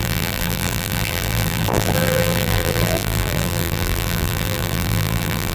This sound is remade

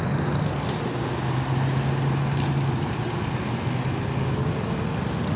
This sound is recorded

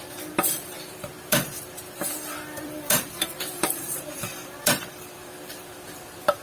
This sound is remade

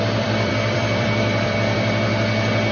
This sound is remade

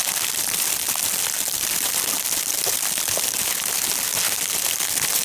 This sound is recorded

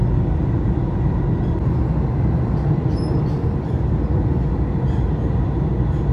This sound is recorded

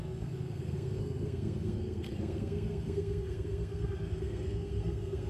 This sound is remade